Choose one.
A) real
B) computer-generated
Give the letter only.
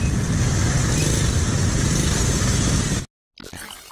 A